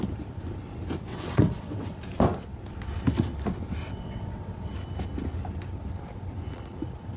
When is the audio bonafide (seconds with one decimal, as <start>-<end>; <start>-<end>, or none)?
0.0-1.1; 2.0-3.8; 4.7-7.2